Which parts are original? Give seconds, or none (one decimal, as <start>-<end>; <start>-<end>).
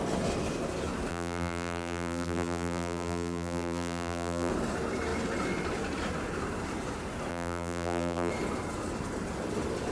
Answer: 0.0-1.1; 4.5-7.3; 8.3-9.9